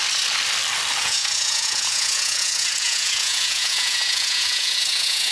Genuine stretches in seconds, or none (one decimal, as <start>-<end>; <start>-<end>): 0.0-1.0